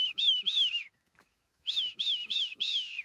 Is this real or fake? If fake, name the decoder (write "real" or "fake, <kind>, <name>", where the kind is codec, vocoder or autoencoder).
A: fake, autoencoder, DAC-VAE